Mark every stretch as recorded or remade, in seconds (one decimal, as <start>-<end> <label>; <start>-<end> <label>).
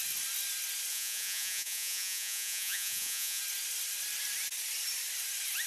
0.0-0.9 recorded; 0.9-3.4 remade; 3.4-5.7 recorded